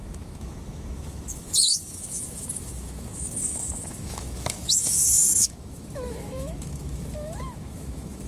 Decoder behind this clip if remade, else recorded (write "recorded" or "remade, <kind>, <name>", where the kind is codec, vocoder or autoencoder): remade, autoencoder, DAC-VAE